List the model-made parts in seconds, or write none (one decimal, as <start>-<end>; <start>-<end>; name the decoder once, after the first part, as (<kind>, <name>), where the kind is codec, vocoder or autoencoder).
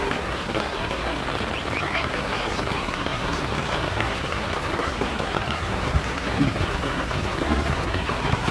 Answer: 0.0-1.2 (codec, SNAC); 1.8-8.5